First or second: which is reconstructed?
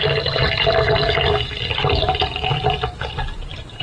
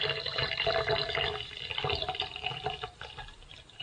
second